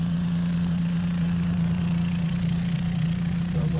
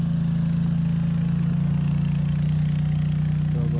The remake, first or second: first